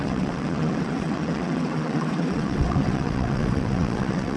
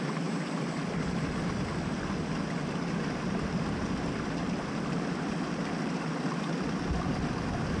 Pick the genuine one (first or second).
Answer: second